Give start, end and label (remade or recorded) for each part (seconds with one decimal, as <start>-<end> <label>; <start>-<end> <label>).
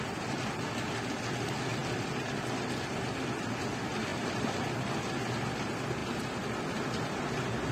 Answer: 0.0-7.7 recorded